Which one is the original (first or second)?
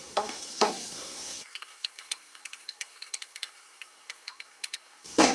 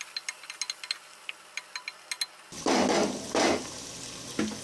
second